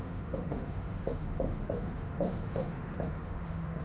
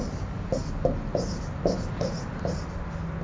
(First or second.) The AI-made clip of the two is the first